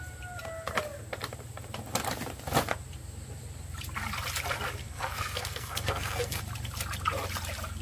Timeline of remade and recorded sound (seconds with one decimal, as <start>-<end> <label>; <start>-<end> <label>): 0.0-4.8 recorded; 4.8-6.4 remade; 6.4-7.8 recorded